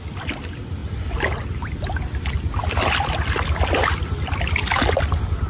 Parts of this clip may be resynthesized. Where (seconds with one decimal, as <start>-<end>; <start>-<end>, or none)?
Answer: none